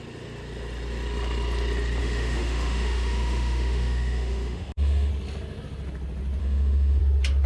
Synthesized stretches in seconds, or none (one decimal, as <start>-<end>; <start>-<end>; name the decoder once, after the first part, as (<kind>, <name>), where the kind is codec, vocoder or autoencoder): 2.0-5.1 (autoencoder, DAC-VAE); 6.4-7.0